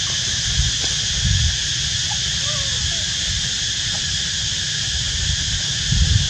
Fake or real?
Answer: real